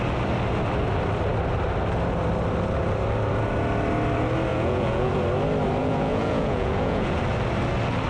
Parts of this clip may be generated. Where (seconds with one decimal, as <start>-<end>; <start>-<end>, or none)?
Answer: 4.5-5.1; 5.8-7.2